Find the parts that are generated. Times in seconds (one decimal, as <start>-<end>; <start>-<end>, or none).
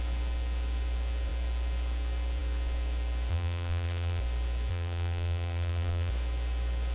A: 3.3-4.2; 4.7-6.1